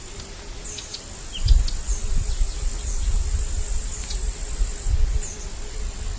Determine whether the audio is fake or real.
real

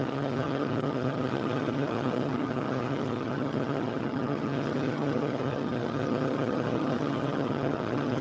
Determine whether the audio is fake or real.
fake